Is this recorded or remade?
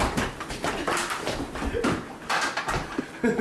recorded